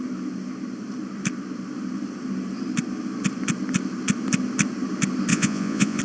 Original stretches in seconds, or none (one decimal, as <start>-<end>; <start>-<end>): 0.0-5.3